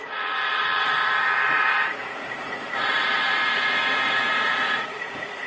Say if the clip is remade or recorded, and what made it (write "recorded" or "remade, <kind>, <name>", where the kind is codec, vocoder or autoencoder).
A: remade, vocoder, Vocos